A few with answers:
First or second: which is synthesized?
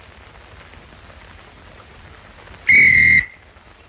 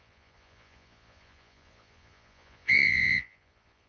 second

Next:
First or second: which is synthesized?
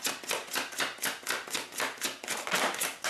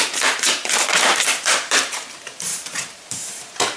second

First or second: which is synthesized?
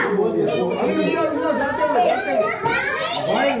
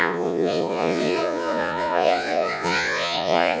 second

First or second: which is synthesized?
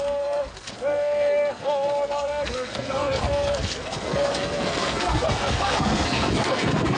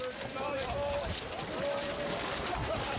first